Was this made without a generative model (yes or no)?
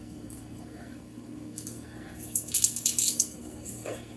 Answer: no